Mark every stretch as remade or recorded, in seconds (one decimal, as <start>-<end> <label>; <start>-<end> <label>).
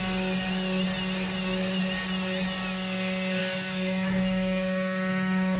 0.0-3.4 recorded; 3.4-5.6 remade